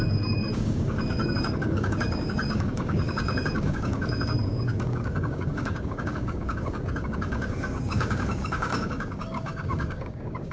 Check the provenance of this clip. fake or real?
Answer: fake